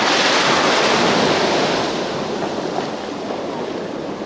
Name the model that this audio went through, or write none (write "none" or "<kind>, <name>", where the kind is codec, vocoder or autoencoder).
none